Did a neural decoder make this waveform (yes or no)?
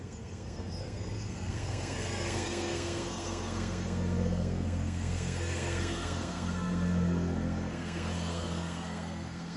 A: yes